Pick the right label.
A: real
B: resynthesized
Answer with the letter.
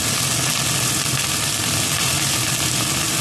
A